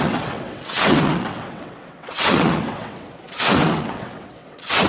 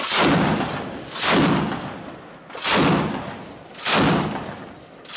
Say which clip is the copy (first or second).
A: first